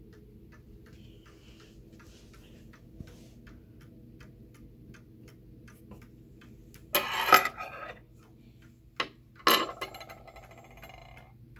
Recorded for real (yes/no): yes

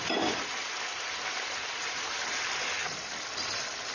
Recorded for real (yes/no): no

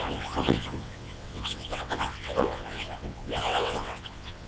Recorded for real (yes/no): no